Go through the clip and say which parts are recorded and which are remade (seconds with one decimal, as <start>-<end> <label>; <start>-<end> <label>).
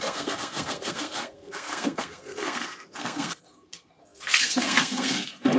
0.0-5.6 remade